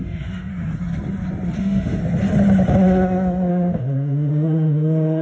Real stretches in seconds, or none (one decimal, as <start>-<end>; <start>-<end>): 0.5-1.6; 2.0-3.5